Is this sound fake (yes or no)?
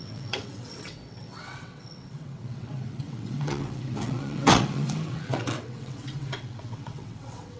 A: yes